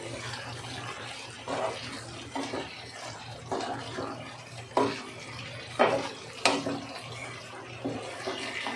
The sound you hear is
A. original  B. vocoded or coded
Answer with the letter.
A